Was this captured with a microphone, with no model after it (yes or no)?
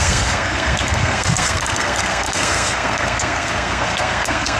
no